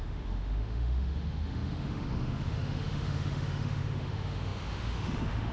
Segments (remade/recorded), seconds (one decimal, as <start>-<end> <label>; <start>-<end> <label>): 0.0-5.5 remade